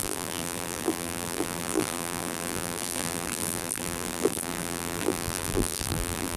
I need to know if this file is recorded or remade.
remade